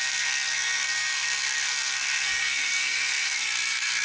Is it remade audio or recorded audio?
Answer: remade